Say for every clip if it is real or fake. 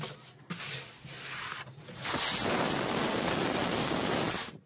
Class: real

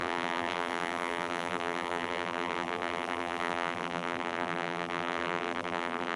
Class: fake